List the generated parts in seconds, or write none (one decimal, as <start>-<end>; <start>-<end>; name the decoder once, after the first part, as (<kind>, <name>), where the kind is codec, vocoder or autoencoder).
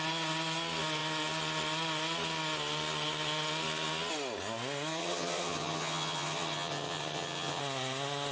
5.0-7.6 (vocoder, HiFi-GAN)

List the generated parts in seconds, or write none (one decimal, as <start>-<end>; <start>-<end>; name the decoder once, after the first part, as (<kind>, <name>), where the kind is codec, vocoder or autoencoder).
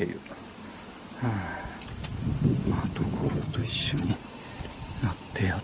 3.2-4.1 (vocoder, HiFi-GAN)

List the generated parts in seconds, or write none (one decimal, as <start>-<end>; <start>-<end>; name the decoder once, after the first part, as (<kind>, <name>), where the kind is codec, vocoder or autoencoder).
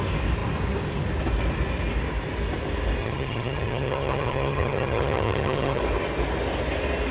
3.0-5.8 (vocoder, HiFi-GAN)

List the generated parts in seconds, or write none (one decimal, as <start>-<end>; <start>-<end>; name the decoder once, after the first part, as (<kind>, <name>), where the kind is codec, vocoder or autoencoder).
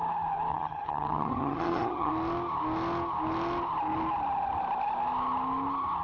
0.5-2.1 (vocoder, HiFi-GAN)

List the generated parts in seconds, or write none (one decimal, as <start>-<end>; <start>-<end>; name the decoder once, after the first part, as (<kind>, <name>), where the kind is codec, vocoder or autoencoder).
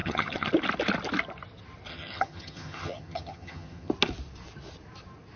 0.0-0.5 (vocoder, HiFi-GAN); 1.9-3.9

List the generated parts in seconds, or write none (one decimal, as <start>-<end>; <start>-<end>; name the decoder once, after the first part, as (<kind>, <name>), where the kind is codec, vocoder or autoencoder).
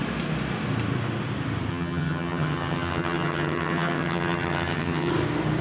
1.7-5.1 (vocoder, HiFi-GAN)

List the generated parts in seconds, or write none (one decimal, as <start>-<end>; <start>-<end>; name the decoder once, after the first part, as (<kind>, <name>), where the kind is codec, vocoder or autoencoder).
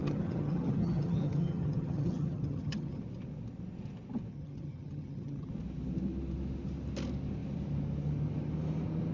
0.0-3.0 (vocoder, HiFi-GAN); 4.3-5.5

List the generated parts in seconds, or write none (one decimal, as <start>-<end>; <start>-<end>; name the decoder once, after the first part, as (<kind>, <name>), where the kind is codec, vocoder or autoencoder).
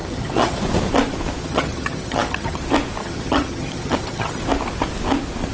0.0-0.6 (vocoder, HiFi-GAN); 1.4-2.6; 3.0-4.4